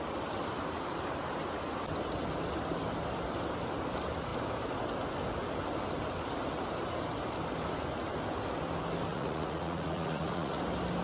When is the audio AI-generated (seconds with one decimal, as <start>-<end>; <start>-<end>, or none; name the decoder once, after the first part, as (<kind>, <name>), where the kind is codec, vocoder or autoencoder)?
9.1-10.6 (vocoder, Vocos)